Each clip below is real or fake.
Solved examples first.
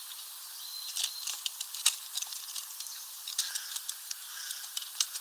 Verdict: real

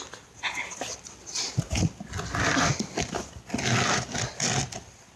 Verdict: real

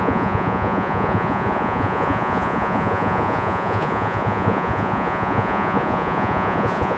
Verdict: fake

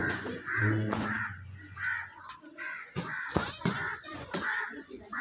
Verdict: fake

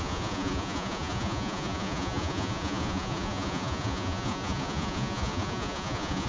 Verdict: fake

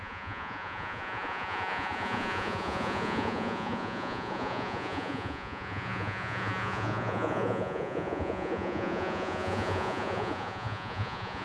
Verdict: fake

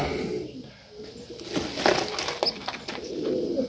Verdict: real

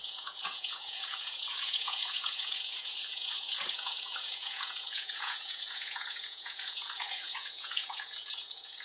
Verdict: fake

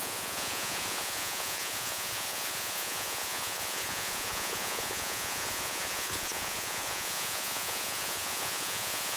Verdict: fake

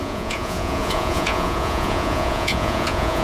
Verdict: fake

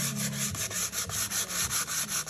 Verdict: real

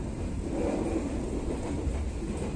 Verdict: real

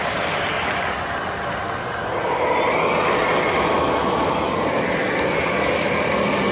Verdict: real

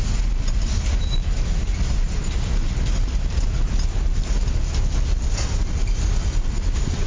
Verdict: real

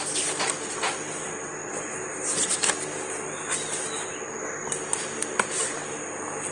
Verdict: real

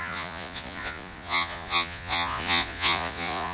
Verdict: fake